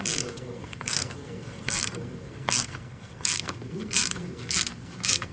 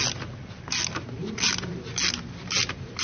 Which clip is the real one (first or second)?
second